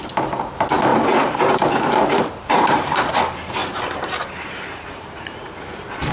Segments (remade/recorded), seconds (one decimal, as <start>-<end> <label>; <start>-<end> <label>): 0.0-0.9 recorded; 0.9-3.1 remade; 3.1-3.6 recorded; 3.6-5.6 remade; 5.6-6.1 recorded